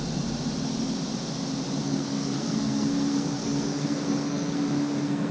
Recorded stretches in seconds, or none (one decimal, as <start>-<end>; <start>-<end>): 0.0-1.8